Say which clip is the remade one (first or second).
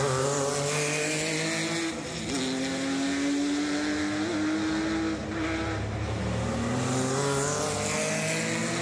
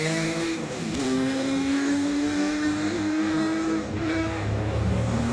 second